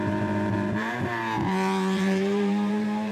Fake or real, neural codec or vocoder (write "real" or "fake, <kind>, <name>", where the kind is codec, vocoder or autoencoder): fake, vocoder, BigVGAN v2